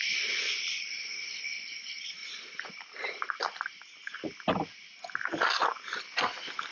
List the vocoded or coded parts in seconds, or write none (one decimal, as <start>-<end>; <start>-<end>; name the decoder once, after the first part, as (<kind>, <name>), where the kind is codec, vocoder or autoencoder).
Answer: none